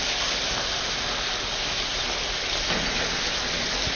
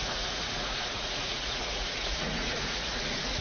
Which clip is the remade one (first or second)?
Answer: second